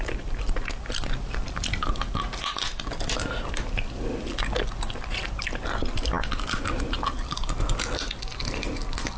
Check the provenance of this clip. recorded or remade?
recorded